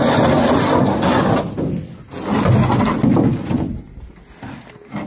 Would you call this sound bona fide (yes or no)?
yes